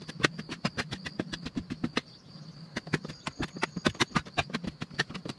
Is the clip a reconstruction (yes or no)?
yes